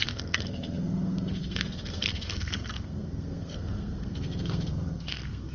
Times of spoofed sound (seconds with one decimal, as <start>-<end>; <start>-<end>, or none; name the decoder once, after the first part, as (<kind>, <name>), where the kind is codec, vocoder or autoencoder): 0.0-5.5 (codec, SNAC)